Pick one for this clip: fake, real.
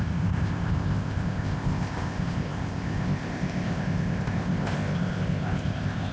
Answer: fake